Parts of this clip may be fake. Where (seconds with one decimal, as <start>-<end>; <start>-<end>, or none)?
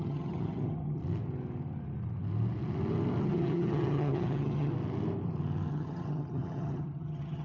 0.0-1.0; 3.2-4.7; 5.7-7.4